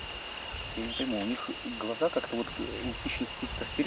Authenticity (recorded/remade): recorded